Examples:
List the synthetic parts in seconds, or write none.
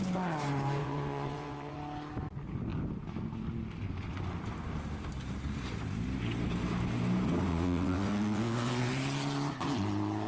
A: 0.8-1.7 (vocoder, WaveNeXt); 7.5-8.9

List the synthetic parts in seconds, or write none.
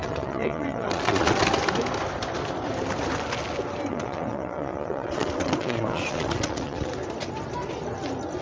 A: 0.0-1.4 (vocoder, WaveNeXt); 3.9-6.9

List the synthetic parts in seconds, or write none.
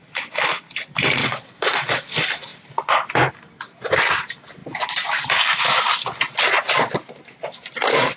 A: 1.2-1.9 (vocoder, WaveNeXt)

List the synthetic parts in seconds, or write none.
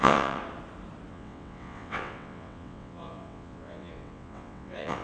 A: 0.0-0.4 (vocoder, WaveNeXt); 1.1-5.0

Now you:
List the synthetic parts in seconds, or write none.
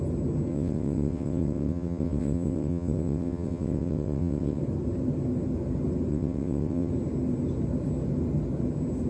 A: 0.5-4.6 (vocoder, WaveNeXt); 6.1-6.9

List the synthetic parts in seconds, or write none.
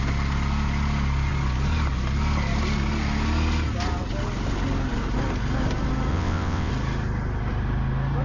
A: 6.1-6.7 (vocoder, WaveNeXt)